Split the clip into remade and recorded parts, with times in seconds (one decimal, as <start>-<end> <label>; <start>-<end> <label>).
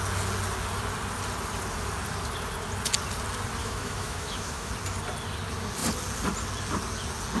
0.0-3.6 recorded; 3.6-4.7 remade; 4.7-7.4 recorded